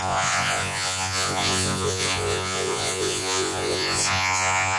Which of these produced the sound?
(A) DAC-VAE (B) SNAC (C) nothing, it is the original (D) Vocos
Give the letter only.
D